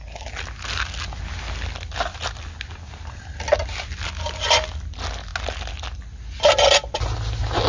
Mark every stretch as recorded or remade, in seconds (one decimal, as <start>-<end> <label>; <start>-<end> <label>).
0.0-7.7 recorded